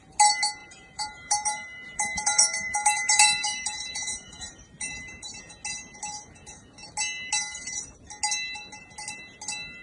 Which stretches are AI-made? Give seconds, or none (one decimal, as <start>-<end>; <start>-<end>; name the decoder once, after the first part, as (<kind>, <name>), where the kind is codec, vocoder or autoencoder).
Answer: 0.6-5.4 (vocoder, BigVGAN v2)